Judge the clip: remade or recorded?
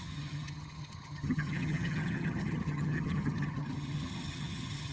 remade